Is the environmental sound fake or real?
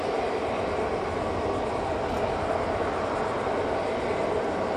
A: real